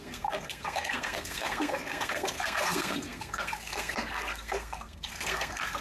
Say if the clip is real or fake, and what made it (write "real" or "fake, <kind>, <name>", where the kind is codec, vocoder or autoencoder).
fake, codec, SNAC